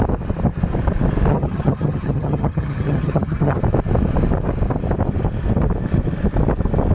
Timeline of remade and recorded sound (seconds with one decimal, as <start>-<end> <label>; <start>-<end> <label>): 0.0-1.3 recorded; 1.3-3.6 remade; 3.6-6.9 recorded